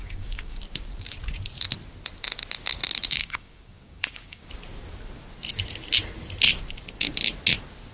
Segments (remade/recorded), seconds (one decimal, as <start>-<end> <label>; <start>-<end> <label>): 0.0-0.6 remade; 0.6-3.2 recorded; 3.2-4.5 remade; 4.5-7.9 recorded